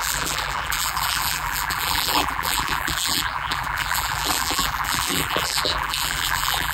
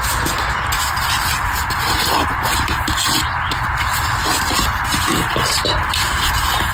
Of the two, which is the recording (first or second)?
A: second